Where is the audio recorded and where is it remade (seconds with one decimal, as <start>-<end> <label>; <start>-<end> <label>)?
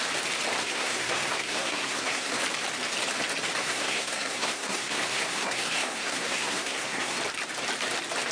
0.0-0.6 recorded; 0.6-2.4 remade; 2.4-3.6 recorded; 3.6-7.2 remade; 7.2-8.3 recorded